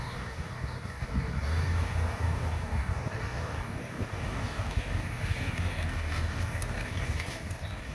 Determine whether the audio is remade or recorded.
remade